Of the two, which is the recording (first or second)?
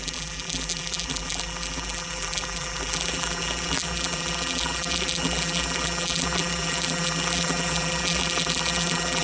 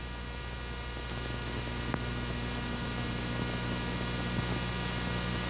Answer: second